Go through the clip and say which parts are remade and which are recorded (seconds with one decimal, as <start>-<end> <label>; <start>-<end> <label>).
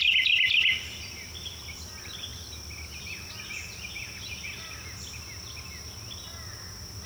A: 0.0-7.1 recorded